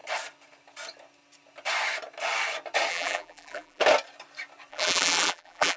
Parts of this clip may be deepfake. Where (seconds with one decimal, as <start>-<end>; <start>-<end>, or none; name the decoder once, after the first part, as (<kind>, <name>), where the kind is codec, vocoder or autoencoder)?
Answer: 2.9-3.8 (vocoder, BigVGAN v2); 4.7-5.8